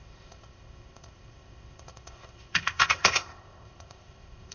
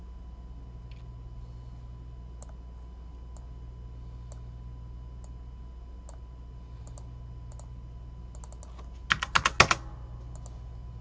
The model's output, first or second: first